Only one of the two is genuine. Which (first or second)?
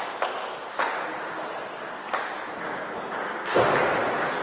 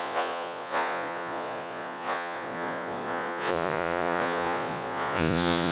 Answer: first